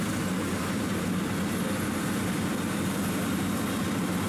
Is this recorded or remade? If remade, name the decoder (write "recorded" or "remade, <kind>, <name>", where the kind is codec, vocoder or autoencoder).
recorded